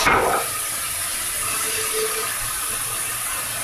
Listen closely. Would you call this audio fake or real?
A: real